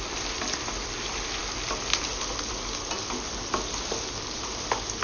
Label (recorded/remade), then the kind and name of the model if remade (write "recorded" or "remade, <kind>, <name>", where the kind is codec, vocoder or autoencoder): recorded